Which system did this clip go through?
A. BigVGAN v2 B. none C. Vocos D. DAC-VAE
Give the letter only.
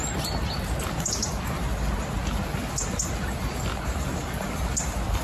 B